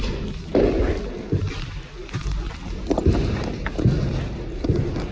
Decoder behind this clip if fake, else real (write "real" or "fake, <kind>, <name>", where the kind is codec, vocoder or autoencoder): real